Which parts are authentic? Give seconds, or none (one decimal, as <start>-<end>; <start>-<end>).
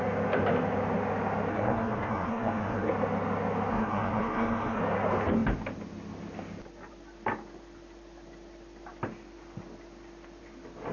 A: 0.0-1.5; 2.9-3.7; 4.8-10.9